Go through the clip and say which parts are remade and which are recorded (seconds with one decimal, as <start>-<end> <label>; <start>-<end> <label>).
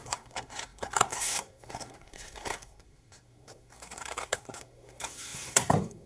0.0-6.1 remade